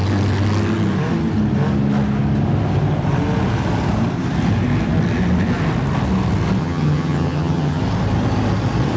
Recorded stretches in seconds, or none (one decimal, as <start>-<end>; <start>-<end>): 0.0-6.6; 7.8-9.0